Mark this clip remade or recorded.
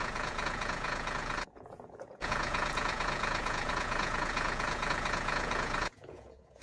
remade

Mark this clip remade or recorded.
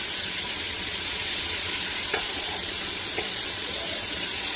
remade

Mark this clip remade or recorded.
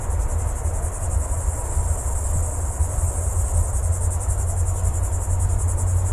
recorded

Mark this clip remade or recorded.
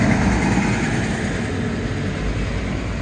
recorded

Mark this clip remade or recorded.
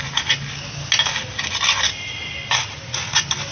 recorded